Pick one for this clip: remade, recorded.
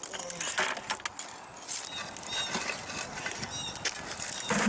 recorded